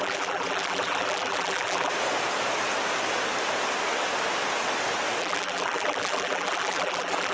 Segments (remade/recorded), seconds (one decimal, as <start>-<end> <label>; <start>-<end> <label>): 0.0-1.9 remade; 1.9-5.2 recorded; 5.2-7.3 remade

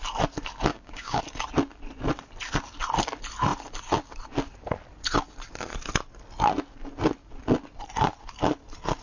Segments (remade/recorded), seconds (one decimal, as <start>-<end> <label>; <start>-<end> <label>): 0.0-0.7 recorded; 0.7-1.2 remade; 1.2-9.0 recorded